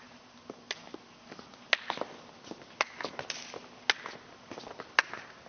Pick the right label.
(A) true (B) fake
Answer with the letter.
A